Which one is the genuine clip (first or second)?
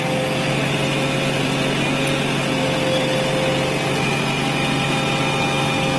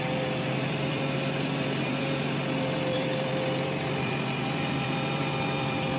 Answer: first